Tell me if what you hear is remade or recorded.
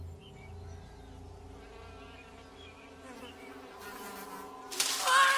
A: recorded